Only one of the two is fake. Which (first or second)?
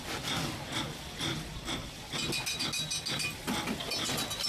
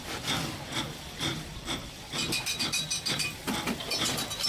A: second